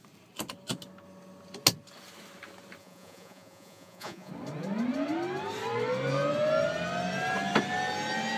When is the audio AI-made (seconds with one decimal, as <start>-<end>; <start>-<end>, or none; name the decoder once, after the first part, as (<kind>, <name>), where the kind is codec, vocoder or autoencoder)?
2.8-4.3 (vocoder, Vocos)